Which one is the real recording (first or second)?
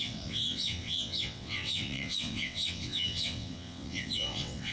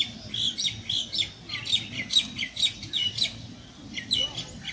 second